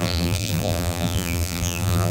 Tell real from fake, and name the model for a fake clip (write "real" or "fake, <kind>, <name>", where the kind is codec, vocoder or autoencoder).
fake, vocoder, BigVGAN v2